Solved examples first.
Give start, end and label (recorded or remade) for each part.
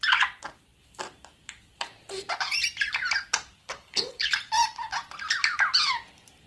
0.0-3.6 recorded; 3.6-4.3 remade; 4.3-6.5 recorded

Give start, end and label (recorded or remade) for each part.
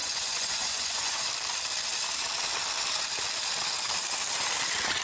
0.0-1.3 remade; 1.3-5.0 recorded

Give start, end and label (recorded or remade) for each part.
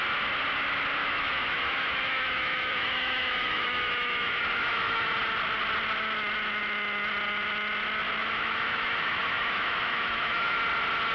0.0-1.0 recorded; 1.0-5.2 remade; 5.2-8.2 recorded; 8.2-10.6 remade; 10.6-11.1 recorded